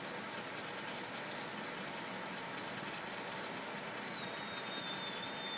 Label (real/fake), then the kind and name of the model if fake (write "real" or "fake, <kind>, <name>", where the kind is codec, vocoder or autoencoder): real